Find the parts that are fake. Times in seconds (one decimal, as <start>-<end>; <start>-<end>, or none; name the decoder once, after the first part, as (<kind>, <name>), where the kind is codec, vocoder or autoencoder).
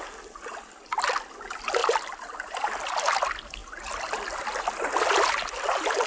none